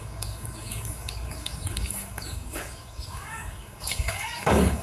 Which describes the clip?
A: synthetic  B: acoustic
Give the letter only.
A